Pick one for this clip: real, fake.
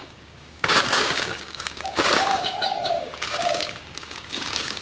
fake